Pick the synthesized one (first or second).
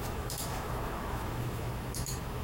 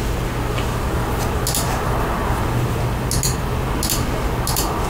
first